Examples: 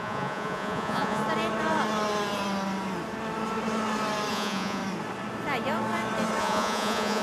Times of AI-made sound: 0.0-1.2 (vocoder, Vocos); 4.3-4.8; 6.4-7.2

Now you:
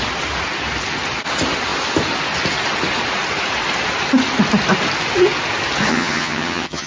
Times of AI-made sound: 5.9-6.9 (vocoder, HiFi-GAN)

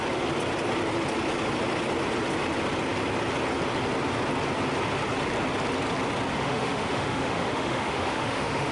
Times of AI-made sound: 6.3-8.7 (autoencoder, DAC-VAE)